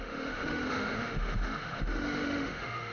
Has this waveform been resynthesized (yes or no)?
yes